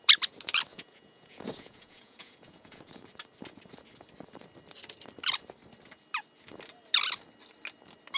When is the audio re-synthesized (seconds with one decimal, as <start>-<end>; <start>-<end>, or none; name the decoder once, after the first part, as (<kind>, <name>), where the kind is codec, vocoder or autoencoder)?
0.7-3.0 (vocoder, Vocos)